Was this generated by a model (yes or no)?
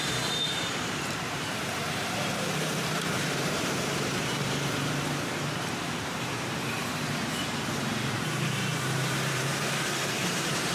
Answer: yes